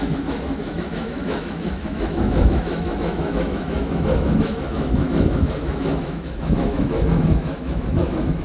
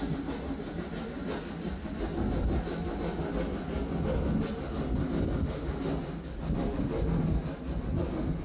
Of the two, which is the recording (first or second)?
second